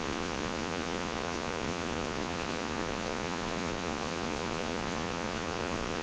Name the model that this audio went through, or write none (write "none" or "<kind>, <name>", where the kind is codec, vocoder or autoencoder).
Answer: vocoder, Vocos